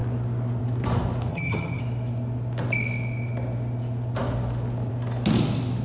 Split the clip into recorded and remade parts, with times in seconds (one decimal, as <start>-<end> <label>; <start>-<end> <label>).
0.0-1.3 recorded; 1.3-1.8 remade; 1.8-5.8 recorded